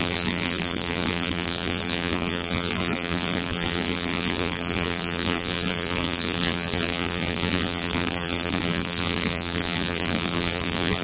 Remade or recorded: remade